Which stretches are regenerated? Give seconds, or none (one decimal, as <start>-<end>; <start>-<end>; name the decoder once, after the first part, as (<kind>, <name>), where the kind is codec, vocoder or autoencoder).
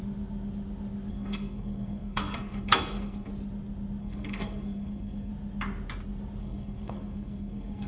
1.1-3.3 (codec, SNAC); 4.0-5.3; 6.4-7.9